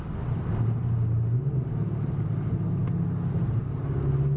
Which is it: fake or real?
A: real